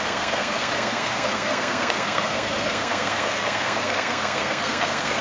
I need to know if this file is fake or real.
fake